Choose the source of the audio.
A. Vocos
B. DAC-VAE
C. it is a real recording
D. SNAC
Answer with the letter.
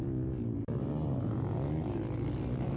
C